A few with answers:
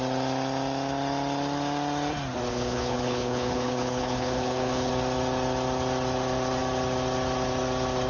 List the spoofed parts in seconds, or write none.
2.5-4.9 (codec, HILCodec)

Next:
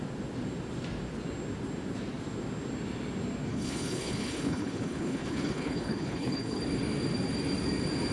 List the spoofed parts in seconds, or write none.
3.5-6.6 (codec, HILCodec)

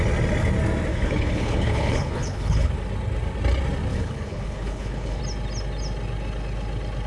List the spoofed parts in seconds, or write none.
0.9-2.7 (codec, HILCodec); 3.9-5.2

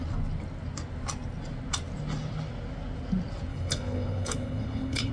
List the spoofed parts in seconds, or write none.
3.5-5.1 (codec, HILCodec)